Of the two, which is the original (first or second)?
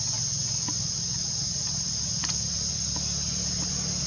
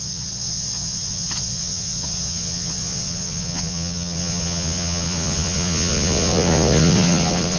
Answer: first